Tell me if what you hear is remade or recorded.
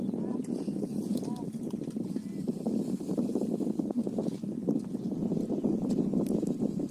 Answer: recorded